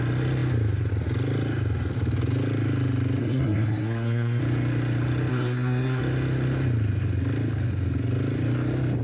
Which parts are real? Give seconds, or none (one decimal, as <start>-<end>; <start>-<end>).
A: 0.0-3.2; 4.4-5.3; 6.0-9.0